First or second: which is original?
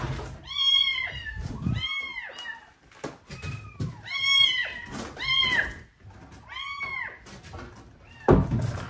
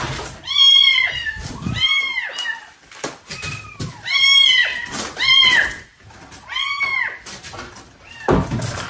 first